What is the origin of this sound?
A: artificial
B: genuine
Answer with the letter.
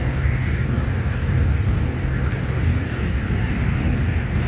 A